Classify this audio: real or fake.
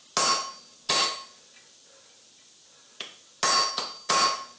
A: real